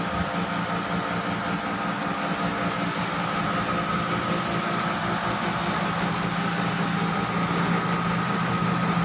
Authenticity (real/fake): real